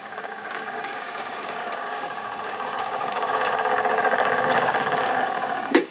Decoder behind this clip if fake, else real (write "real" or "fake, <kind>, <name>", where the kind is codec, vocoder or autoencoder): fake, codec, DAC